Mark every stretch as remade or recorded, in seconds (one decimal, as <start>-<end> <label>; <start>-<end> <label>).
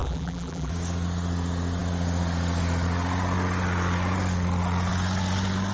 0.0-0.7 remade; 0.7-5.7 recorded